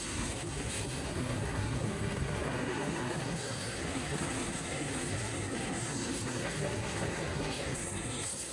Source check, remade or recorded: remade